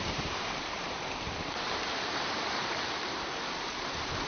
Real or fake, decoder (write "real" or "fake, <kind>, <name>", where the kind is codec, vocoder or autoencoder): fake, vocoder, BigVGAN v2